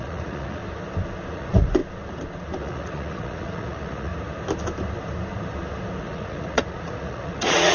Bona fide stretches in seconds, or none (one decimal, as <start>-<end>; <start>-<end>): 0.6-1.3; 1.8-2.6; 4.1-6.0